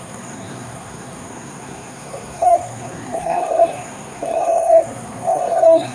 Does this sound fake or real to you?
fake